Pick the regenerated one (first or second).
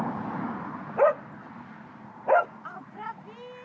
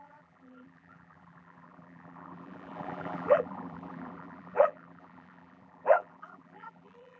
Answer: second